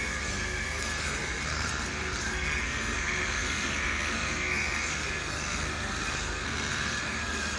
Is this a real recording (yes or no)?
no